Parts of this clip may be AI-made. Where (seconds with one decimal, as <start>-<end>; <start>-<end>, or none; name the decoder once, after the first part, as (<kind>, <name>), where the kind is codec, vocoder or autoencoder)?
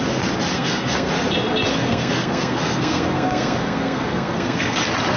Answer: 0.5-1.1 (codec, SNAC); 1.7-4.8